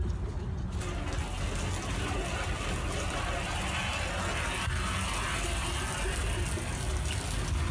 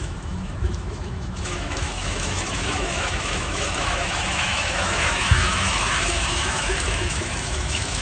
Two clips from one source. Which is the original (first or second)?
first